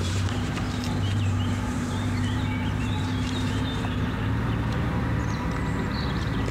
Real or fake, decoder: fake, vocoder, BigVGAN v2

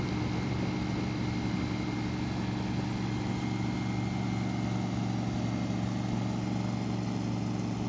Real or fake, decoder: real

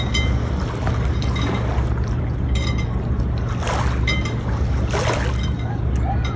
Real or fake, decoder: real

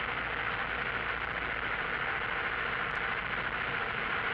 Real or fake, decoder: real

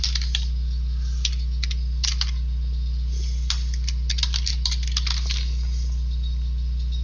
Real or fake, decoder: real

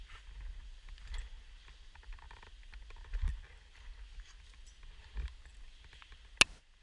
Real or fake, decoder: real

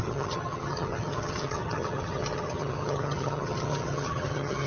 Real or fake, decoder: fake, vocoder, HiFi-GAN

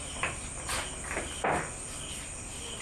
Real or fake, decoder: real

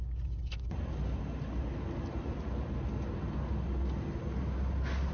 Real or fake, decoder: real